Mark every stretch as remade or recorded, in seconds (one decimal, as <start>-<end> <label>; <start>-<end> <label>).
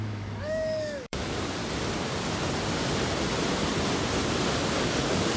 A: 0.0-1.6 remade; 1.6-4.8 recorded; 4.8-5.4 remade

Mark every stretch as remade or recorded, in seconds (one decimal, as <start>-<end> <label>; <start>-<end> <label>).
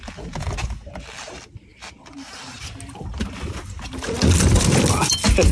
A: 0.0-5.5 recorded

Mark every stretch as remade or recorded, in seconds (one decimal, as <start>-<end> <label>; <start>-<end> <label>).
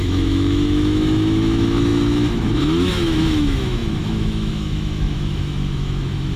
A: 0.0-6.4 remade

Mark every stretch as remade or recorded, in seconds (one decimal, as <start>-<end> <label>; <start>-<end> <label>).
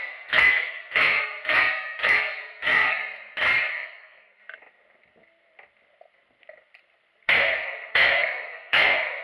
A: 0.0-3.0 remade; 3.0-3.7 recorded; 3.7-4.4 remade; 4.4-7.3 recorded; 7.3-9.2 remade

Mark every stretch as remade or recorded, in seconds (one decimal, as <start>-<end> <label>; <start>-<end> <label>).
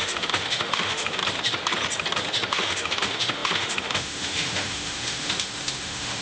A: 0.0-1.2 remade; 1.2-2.5 recorded; 2.5-6.2 remade